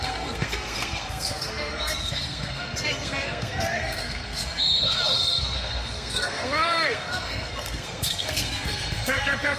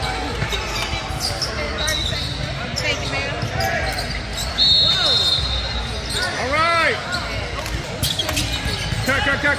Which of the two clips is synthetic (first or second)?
first